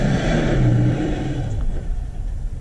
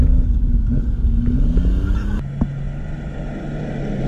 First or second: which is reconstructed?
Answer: first